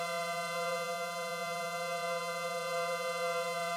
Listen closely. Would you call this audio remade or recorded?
remade